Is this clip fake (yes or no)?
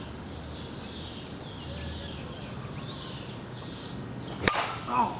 no